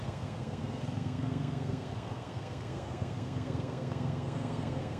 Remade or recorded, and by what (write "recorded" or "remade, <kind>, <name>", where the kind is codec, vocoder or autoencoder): remade, codec, SNAC